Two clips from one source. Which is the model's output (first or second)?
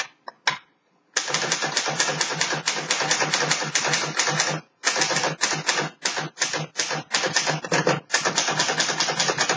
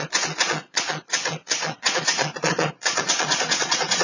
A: second